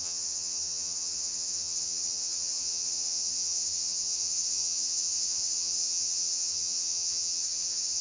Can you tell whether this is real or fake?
fake